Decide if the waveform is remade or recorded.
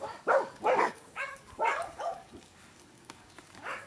remade